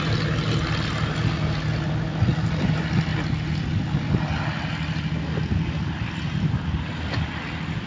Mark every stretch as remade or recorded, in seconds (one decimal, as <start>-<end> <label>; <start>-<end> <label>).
0.0-7.9 recorded